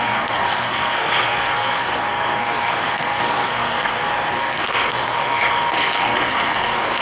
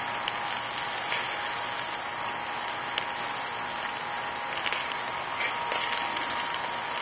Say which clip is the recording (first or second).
second